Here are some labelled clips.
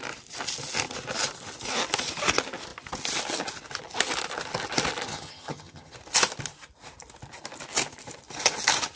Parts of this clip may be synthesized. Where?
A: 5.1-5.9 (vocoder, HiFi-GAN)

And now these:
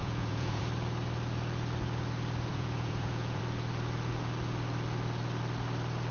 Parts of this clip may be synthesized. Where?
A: 0.0-0.6 (vocoder, Vocos); 2.5-3.4

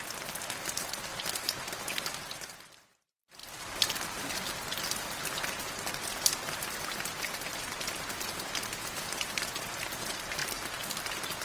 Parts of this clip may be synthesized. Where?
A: 1.1-1.8 (vocoder, BigVGAN v2); 3.4-4.3; 10.4-11.4

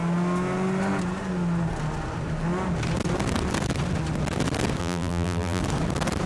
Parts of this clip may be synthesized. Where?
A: 4.8-5.6 (vocoder, BigVGAN v2)

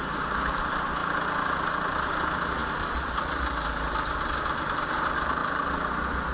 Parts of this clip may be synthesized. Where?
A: none

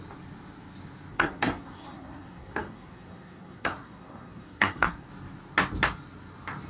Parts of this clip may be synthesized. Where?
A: 1.1-5.1 (codec, SNAC)